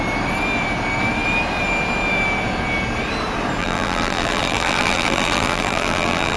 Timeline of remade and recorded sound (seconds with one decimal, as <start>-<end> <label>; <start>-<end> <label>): 0.0-3.6 recorded; 3.6-6.4 remade